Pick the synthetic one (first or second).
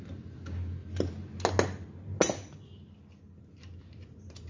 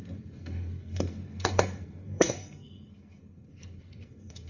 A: second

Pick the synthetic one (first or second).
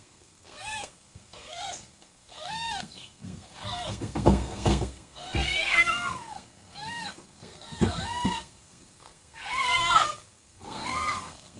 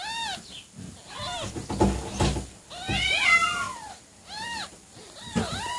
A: first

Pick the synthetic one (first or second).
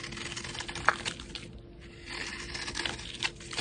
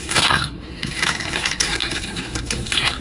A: second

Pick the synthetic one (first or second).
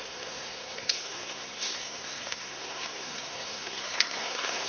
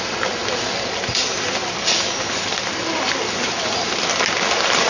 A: first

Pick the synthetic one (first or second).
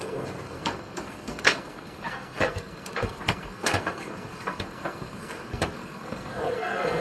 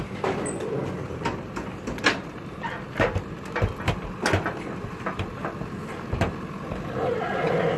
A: first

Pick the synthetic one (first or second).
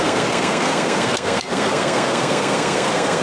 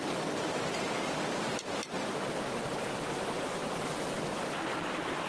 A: first